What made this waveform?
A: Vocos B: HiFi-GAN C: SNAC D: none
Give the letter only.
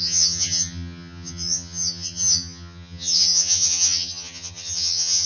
B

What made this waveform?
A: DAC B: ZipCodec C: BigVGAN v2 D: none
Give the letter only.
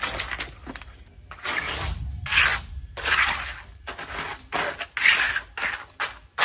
D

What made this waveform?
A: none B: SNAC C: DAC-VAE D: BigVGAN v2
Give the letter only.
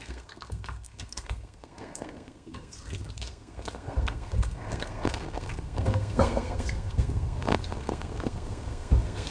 B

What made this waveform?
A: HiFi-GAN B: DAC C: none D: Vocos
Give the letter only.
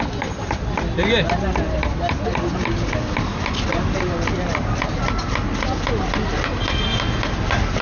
C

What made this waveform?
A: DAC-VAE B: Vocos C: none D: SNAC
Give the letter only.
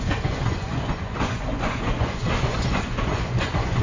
B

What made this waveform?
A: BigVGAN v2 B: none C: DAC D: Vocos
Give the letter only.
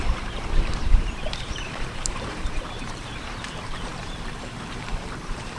A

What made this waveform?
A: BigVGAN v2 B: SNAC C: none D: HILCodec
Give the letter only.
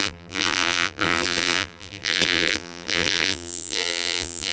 A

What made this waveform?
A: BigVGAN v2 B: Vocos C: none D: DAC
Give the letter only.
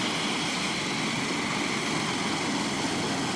C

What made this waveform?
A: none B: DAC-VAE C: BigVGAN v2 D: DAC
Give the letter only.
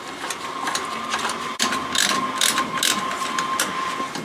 A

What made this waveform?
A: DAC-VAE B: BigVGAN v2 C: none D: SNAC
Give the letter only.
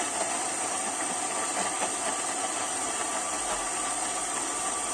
B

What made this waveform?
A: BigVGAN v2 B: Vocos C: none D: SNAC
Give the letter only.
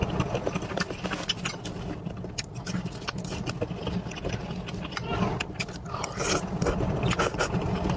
C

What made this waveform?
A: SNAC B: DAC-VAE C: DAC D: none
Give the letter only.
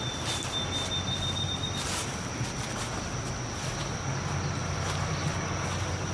D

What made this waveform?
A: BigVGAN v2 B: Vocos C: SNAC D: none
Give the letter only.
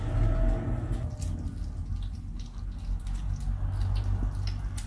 D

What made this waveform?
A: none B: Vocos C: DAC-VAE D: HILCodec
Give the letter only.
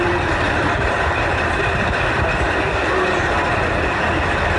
A